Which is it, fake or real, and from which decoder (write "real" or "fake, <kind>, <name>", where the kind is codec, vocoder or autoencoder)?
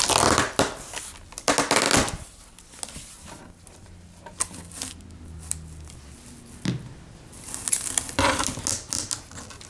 real